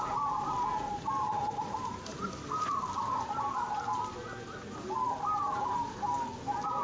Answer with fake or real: real